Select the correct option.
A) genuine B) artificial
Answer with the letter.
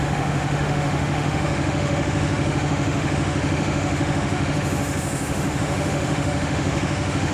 B